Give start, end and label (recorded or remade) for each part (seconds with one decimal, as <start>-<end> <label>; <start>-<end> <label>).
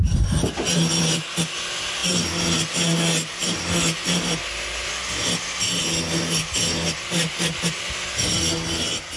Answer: 0.0-9.2 recorded